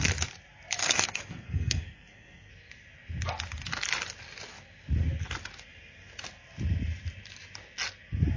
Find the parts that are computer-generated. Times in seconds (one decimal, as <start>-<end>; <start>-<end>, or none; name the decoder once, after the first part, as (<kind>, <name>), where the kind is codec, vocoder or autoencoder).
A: 0.8-2.5 (codec, SNAC)